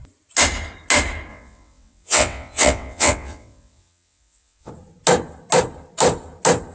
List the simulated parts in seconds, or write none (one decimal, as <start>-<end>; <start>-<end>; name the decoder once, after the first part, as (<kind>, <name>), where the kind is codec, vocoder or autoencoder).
1.3-4.7 (vocoder, WaveNeXt)